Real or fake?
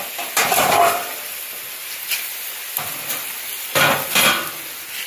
real